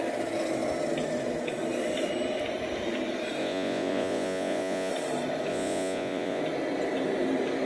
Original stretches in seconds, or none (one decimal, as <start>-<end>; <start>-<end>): 0.0-3.4; 4.9-5.5; 6.4-7.7